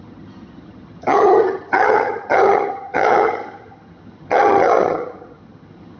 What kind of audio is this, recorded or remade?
remade